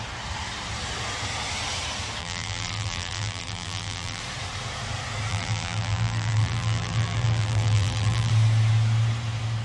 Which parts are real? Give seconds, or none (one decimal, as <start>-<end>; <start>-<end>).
0.0-2.2; 4.2-5.3; 8.3-9.6